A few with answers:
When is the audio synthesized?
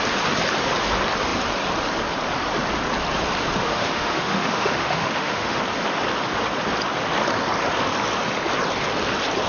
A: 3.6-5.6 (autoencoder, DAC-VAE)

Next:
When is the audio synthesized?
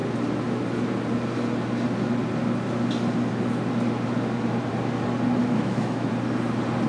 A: 5.4-6.1 (autoencoder, DAC-VAE)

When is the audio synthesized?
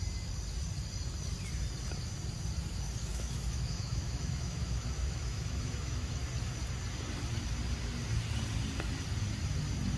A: 3.1-6.2 (autoencoder, DAC-VAE)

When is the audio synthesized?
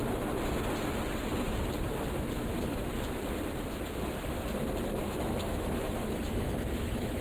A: 5.0-7.2 (autoencoder, DAC-VAE)